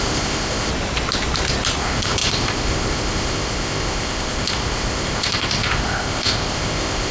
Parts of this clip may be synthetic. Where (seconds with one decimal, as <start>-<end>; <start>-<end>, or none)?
0.0-0.7; 1.8-7.1

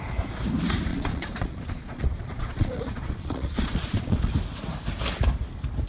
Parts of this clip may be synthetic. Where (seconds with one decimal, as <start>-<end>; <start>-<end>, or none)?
0.9-4.3

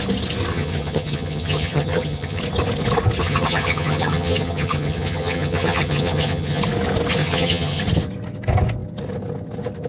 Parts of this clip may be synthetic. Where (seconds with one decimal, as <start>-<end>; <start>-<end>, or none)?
0.5-2.4; 3.2-6.6; 7.2-7.8

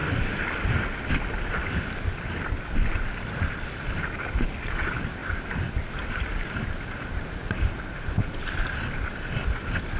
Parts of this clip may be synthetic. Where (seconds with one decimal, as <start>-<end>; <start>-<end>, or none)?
5.2-6.2; 7.4-10.0

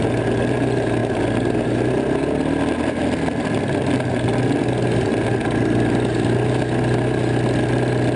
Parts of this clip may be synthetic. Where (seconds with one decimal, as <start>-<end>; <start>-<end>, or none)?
none

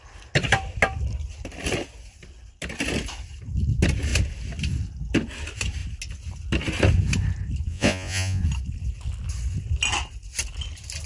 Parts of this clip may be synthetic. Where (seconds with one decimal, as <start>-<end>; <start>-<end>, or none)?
7.7-8.4